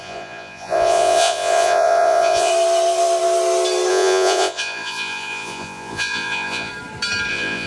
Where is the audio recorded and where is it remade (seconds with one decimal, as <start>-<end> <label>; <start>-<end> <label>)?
0.0-2.5 remade; 2.5-3.9 recorded; 3.9-6.7 remade; 6.7-7.3 recorded; 7.3-7.7 remade